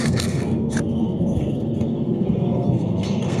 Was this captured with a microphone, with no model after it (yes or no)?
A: no